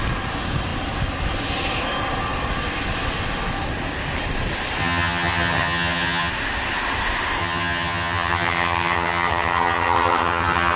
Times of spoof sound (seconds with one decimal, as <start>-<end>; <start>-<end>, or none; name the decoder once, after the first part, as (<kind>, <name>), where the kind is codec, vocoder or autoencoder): 4.8-6.3 (vocoder, HiFi-GAN); 7.4-10.8